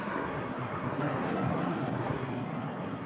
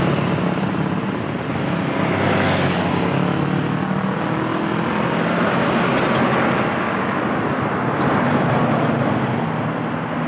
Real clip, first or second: second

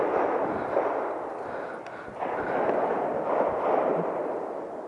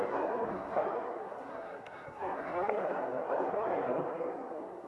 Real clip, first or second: first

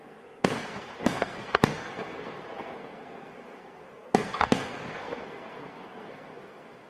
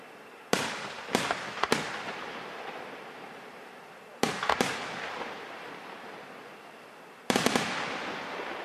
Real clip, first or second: second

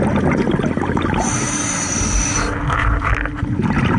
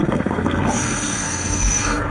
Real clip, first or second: first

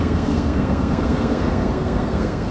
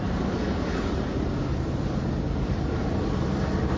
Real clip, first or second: second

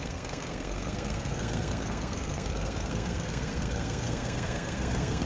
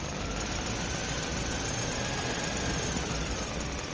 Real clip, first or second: second